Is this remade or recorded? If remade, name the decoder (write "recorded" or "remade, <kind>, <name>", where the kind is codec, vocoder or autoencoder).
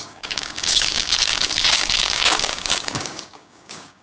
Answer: remade, codec, DAC